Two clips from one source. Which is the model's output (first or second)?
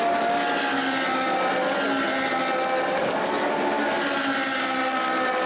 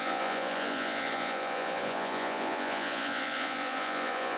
second